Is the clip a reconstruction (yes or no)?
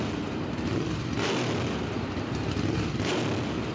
no